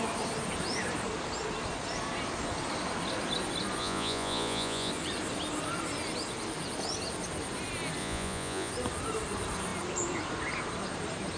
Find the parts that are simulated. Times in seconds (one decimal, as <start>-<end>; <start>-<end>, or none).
3.8-4.9; 8.0-8.7